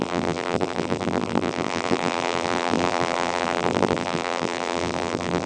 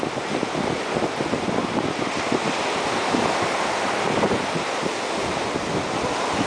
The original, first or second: second